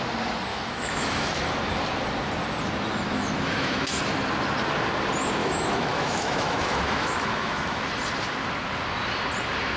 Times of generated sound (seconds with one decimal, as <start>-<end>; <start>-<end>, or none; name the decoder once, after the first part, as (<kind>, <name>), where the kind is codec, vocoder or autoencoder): 0.5-1.4 (autoencoder, DAC-VAE); 3.1-4.0; 5.4-7.8